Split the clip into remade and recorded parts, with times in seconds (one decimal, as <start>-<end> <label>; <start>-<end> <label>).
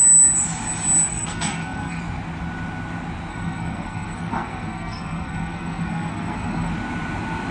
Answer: 0.0-1.1 recorded; 1.1-2.0 remade; 2.0-3.3 recorded; 3.3-6.7 remade; 6.7-7.5 recorded